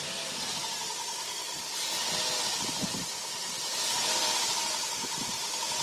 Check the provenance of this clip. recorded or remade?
recorded